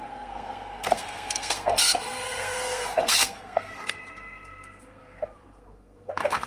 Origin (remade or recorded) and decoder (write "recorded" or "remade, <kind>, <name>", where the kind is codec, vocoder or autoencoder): remade, codec, SNAC